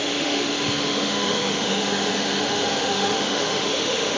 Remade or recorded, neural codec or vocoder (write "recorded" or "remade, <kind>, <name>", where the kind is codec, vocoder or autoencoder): remade, autoencoder, DAC-VAE